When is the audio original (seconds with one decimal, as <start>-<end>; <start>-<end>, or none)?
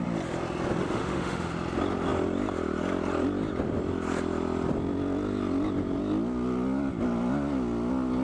0.0-0.8; 1.5-8.2